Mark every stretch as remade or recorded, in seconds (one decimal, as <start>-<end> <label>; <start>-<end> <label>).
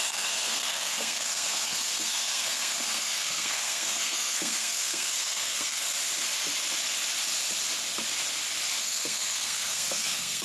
0.0-5.8 remade; 5.8-8.8 recorded; 8.8-10.4 remade